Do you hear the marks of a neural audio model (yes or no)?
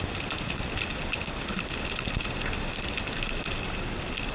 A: no